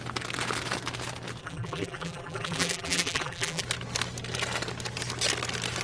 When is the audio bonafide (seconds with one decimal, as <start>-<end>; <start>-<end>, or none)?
0.0-1.4; 3.6-5.8